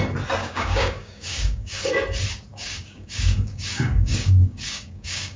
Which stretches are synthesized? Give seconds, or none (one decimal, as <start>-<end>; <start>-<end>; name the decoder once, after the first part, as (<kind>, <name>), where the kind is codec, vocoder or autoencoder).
0.4-1.9 (codec, DAC); 2.5-5.4